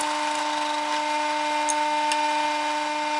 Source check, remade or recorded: recorded